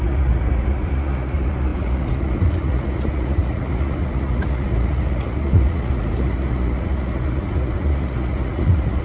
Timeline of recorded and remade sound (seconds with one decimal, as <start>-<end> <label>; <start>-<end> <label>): 0.0-9.0 remade